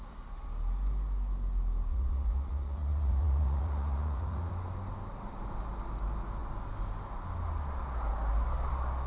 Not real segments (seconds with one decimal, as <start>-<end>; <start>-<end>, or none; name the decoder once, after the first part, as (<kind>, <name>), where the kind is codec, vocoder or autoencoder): 1.9-4.5 (vocoder, Vocos)